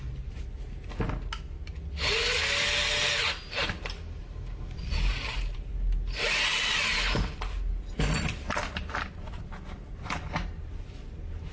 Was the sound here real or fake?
real